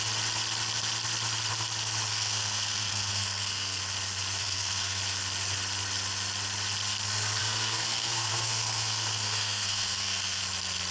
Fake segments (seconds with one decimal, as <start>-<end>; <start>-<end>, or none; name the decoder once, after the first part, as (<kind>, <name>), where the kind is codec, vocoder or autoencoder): 2.1-3.8 (codec, SNAC); 4.4-5.0; 7.4-10.4